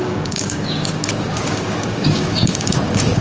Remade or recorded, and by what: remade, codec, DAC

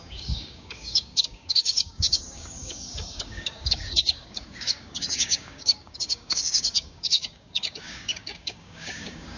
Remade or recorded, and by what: remade, codec, DAC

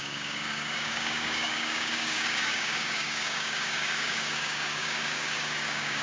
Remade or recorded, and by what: remade, codec, DAC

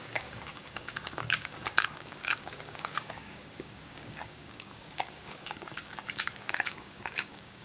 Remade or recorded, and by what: remade, codec, DAC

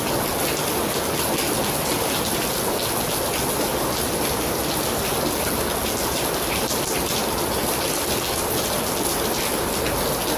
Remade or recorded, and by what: recorded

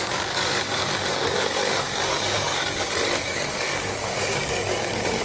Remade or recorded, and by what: remade, codec, DAC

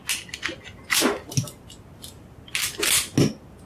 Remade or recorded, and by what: recorded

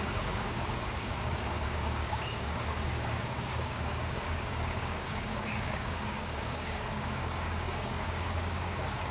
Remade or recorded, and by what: remade, codec, DAC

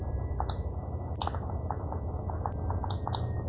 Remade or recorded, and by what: recorded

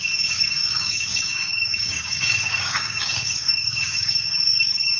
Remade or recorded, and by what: remade, codec, DAC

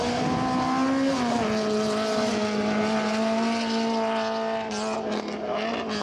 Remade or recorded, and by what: recorded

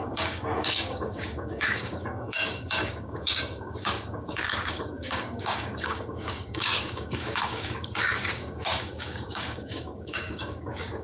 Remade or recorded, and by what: remade, codec, DAC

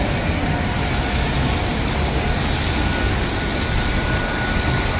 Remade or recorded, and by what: recorded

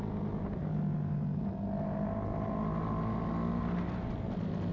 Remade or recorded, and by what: recorded